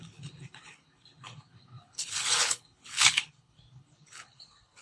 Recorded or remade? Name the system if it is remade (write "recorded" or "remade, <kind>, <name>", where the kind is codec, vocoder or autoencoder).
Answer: remade, codec, HILCodec